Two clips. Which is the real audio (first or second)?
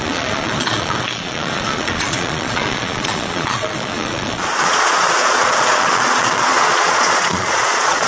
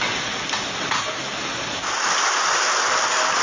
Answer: second